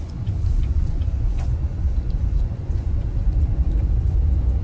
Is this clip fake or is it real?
fake